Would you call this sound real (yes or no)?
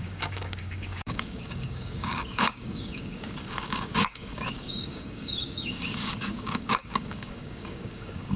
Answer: no